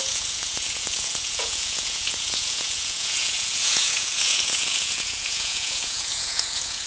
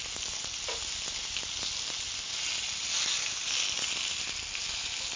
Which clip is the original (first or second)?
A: second